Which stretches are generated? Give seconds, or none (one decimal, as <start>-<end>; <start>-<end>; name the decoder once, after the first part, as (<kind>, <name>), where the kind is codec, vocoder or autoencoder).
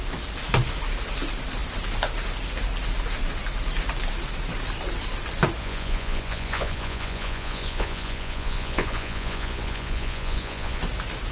5.6-10.8 (vocoder, Vocos)